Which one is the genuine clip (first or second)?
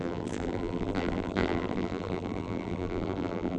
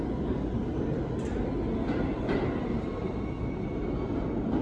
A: second